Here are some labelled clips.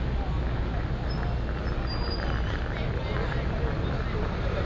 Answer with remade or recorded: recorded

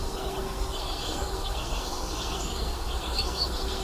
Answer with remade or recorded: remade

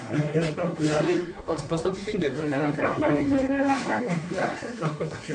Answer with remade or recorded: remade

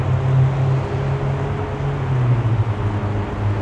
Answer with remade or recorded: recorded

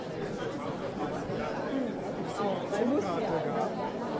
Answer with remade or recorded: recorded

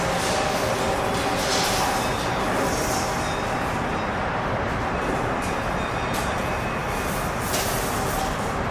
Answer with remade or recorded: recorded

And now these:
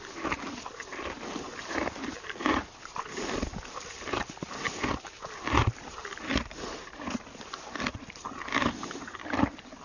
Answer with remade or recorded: recorded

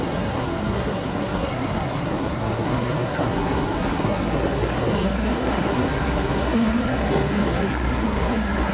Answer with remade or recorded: remade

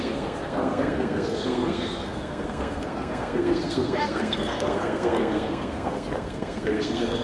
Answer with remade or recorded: remade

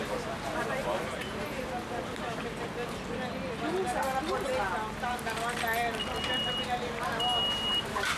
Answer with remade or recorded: recorded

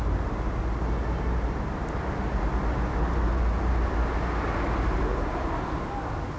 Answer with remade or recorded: recorded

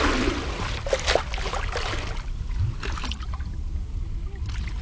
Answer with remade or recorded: recorded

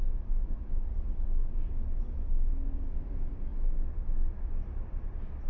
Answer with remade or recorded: recorded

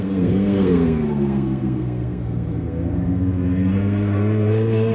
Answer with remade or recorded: remade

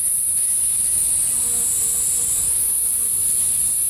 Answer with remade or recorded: recorded